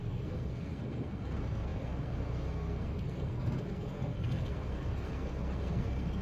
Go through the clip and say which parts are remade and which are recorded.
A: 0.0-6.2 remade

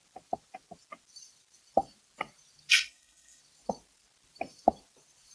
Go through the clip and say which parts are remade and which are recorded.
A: 0.0-2.7 recorded; 2.7-3.4 remade; 3.4-5.3 recorded

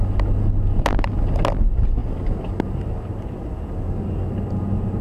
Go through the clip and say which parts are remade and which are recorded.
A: 0.0-5.0 recorded

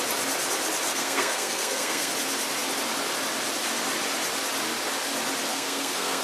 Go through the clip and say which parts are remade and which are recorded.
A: 0.0-0.9 recorded; 0.9-2.1 remade; 2.1-5.5 recorded; 5.5-6.2 remade

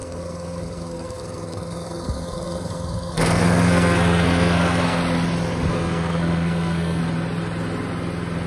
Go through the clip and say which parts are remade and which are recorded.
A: 0.0-5.0 remade; 5.0-5.7 recorded; 5.7-7.0 remade; 7.0-8.5 recorded

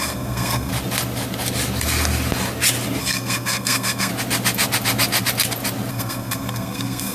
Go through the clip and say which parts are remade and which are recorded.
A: 0.0-0.7 remade; 0.7-3.0 recorded; 3.0-4.1 remade; 4.1-5.9 recorded; 5.9-7.1 remade

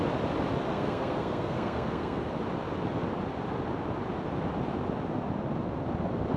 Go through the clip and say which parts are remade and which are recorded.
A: 0.0-0.7 recorded; 0.7-2.3 remade; 2.3-6.4 recorded